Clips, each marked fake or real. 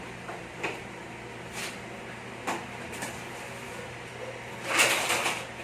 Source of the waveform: real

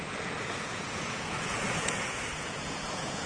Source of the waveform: fake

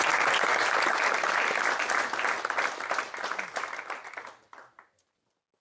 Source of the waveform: real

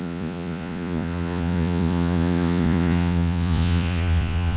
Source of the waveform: fake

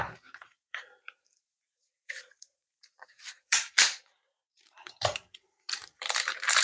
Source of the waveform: fake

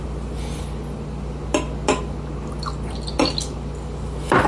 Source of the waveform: real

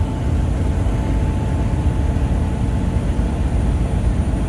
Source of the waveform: real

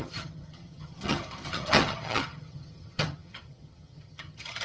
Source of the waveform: fake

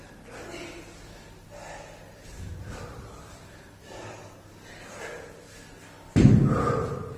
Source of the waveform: real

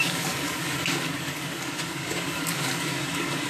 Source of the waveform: fake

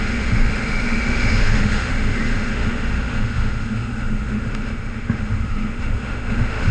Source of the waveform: fake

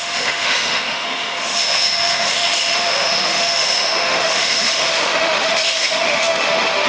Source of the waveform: fake